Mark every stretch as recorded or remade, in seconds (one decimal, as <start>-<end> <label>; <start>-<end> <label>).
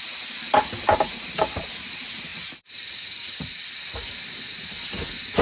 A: 0.0-2.3 recorded; 2.3-2.9 remade; 2.9-5.4 recorded